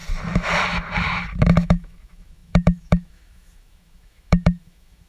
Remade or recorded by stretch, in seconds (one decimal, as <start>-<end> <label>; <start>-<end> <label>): 0.0-1.4 recorded; 1.4-5.1 remade